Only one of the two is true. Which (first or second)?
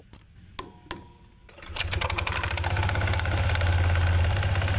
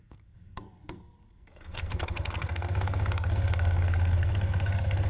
first